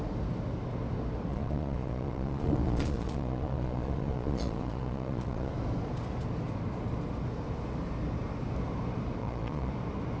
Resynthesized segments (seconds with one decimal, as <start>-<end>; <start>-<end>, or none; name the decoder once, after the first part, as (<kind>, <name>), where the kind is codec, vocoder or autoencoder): 1.3-5.5 (vocoder, Vocos); 9.2-9.7

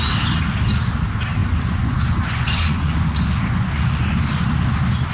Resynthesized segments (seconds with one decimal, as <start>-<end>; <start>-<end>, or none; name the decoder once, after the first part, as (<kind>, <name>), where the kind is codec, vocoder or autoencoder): 1.4-4.5 (vocoder, Vocos)

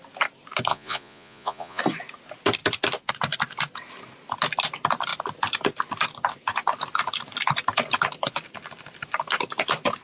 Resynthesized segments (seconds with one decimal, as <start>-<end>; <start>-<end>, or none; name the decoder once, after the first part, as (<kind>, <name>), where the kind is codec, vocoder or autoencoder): 0.7-1.8 (vocoder, Vocos)

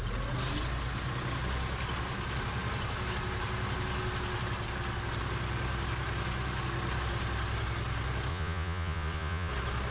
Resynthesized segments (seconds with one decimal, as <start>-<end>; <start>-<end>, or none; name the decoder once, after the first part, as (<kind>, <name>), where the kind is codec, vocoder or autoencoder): 8.3-9.5 (vocoder, Vocos)

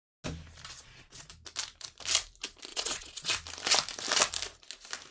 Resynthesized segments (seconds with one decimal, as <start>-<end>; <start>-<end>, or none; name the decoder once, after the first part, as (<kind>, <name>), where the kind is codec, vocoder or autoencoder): 0.7-1.3 (vocoder, Vocos); 2.7-3.3